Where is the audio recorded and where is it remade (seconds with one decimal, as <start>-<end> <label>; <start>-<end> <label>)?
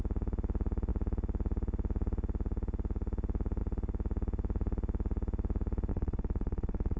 0.0-5.9 recorded; 5.9-7.0 remade